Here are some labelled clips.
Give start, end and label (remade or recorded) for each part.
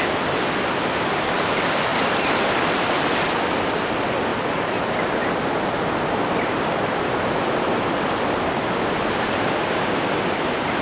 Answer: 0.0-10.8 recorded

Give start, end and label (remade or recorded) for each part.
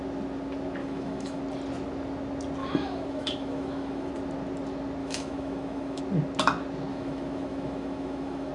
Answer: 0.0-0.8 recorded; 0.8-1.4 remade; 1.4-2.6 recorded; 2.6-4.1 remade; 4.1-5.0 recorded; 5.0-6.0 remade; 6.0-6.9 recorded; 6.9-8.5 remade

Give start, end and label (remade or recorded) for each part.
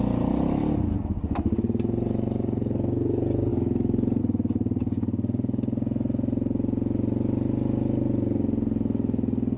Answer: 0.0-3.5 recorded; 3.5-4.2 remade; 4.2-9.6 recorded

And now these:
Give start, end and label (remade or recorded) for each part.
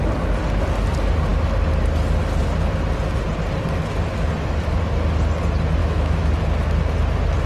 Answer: 0.0-5.8 recorded; 5.8-6.3 remade; 6.3-7.5 recorded